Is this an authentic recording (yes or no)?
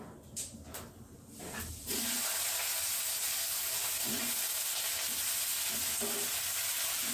yes